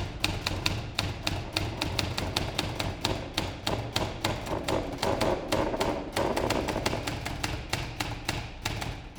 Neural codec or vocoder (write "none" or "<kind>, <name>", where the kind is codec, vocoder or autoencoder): none